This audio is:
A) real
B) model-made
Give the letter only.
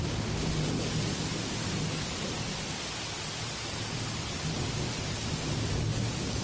A